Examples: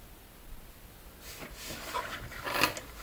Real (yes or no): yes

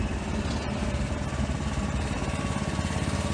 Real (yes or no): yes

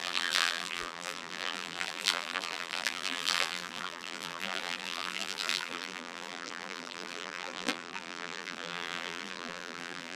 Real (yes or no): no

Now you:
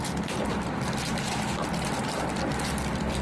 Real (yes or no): yes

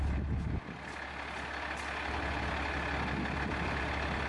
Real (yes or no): yes